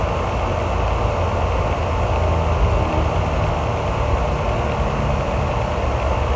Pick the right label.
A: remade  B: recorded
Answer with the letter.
B